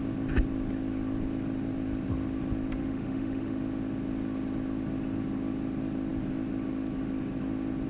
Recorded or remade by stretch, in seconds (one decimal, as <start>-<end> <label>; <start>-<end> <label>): 0.0-2.8 recorded; 2.8-3.6 remade; 3.6-7.9 recorded